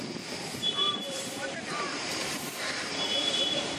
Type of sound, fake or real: fake